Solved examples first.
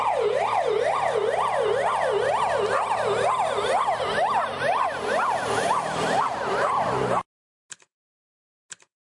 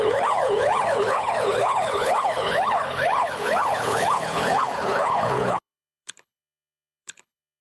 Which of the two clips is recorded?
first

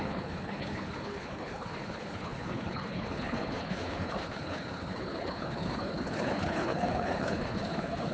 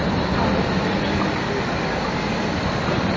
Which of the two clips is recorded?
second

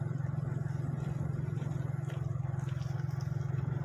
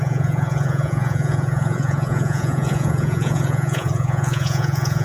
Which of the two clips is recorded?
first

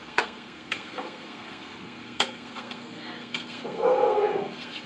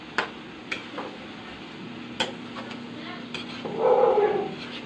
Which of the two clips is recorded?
second